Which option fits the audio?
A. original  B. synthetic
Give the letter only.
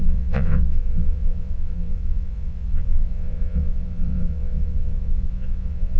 B